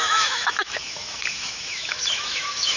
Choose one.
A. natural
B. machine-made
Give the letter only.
B